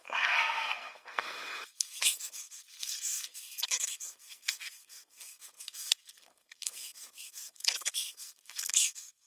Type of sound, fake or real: fake